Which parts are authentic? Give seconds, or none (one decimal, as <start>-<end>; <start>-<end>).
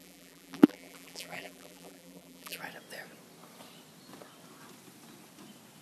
2.6-5.8